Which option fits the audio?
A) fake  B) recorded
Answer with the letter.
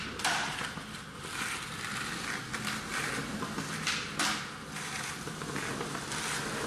B